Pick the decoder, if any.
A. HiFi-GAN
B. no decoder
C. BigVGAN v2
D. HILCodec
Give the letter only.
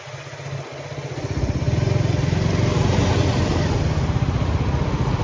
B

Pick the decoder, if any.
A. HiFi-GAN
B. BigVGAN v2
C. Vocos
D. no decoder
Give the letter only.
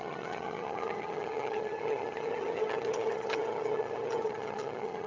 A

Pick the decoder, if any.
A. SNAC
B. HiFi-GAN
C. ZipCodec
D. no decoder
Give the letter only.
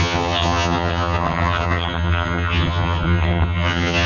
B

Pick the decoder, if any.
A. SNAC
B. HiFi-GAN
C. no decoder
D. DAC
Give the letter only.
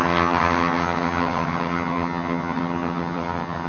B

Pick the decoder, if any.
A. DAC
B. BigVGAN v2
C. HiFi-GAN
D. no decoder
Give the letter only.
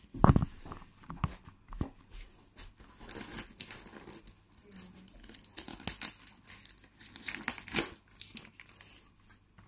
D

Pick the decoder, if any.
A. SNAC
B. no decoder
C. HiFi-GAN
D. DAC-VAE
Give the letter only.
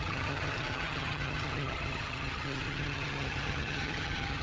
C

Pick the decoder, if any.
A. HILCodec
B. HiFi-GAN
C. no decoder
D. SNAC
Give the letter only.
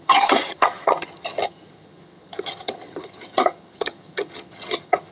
B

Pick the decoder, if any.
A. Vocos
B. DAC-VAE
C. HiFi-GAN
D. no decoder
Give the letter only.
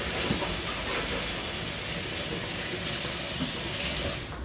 D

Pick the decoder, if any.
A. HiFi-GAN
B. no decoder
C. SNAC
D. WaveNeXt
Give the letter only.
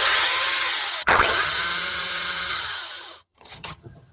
A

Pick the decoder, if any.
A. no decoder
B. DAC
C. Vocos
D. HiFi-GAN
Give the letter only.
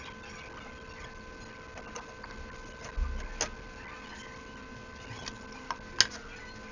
A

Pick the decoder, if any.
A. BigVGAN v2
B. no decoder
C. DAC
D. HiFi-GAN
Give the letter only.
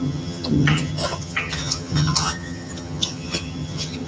D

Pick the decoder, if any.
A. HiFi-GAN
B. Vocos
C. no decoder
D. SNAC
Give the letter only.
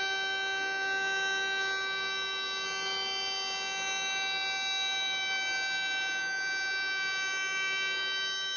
C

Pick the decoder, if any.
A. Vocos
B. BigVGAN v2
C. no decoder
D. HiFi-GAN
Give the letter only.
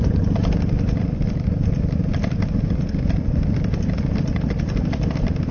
C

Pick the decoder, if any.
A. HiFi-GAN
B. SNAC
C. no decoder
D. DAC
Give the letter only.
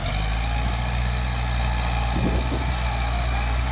C